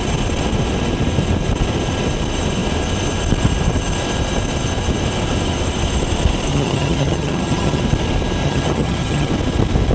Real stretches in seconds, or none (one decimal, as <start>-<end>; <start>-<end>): 0.0-6.5; 7.8-8.4; 9.3-9.9